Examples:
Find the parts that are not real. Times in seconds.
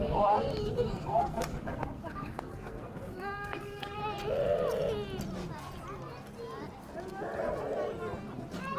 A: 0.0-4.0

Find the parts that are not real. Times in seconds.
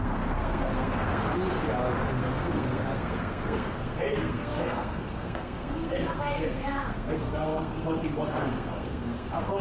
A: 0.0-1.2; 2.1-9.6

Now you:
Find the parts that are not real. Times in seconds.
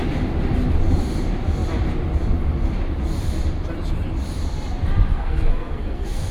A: 5.1-6.3